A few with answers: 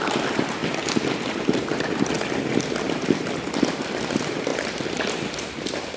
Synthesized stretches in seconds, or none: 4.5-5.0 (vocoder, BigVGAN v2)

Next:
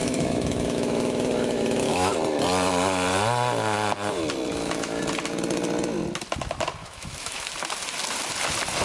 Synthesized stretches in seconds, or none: 0.0-2.1 (autoencoder, DAC-VAE); 4.5-5.0; 6.8-7.5

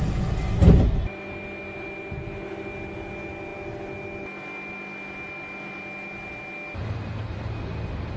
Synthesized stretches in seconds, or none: none

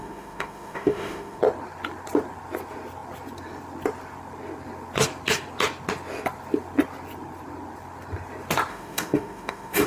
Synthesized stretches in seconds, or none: 0.0-1.4 (autoencoder, DAC-VAE); 8.7-9.9

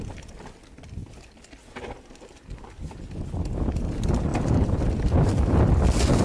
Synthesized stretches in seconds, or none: 1.0-3.0 (vocoder, BigVGAN v2)